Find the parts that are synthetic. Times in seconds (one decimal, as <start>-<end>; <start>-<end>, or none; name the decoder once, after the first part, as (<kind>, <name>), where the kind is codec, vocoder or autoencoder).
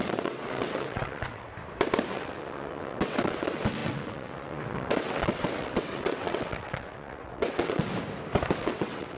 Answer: 0.0-1.5 (vocoder, WaveNeXt); 2.1-7.9; 8.6-9.2